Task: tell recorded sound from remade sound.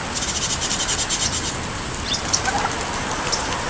recorded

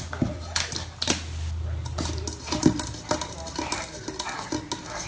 recorded